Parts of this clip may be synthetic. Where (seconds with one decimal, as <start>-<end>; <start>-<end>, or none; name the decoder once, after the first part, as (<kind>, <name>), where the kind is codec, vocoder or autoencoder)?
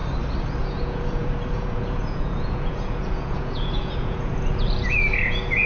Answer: 0.6-5.7 (vocoder, Vocos)